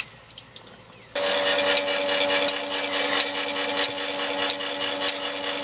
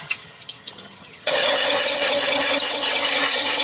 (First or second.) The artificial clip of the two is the second